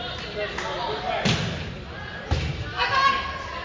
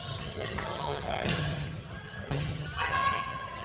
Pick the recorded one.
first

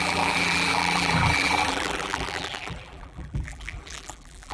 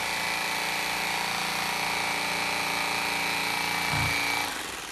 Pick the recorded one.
second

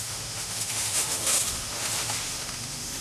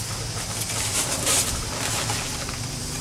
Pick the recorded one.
second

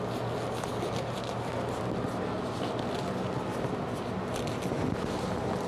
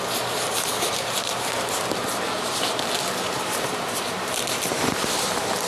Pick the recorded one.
first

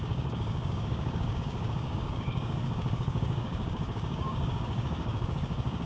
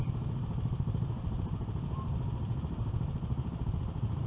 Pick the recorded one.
second